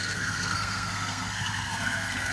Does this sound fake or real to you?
fake